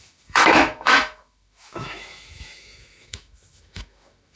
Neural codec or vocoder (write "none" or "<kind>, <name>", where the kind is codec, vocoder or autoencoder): autoencoder, DAC-VAE